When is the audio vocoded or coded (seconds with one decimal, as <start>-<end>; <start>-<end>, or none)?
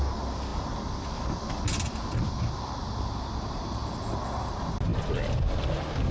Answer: none